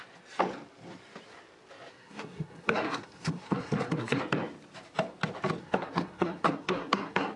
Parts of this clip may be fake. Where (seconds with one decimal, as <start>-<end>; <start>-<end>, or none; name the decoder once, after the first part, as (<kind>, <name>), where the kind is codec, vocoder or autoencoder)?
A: 1.9-4.2 (codec, SNAC); 5.6-7.4